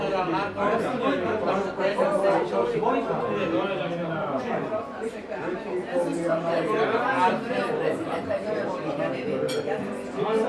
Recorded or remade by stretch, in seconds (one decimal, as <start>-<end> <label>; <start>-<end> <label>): 0.0-4.0 recorded; 4.0-5.2 remade; 5.2-6.2 recorded; 6.2-8.4 remade; 8.4-10.5 recorded